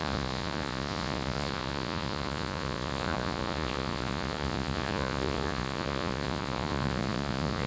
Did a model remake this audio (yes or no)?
yes